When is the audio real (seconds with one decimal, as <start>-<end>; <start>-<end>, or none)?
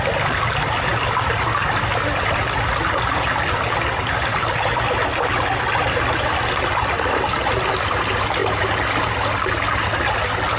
0.0-10.6